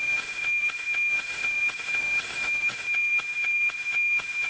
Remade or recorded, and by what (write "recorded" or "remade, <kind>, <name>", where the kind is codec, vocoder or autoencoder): remade, autoencoder, DAC-VAE